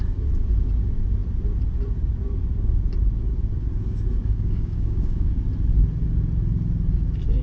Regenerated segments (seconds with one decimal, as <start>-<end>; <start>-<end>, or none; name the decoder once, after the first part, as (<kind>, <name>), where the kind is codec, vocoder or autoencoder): 4.2-5.4 (codec, DAC)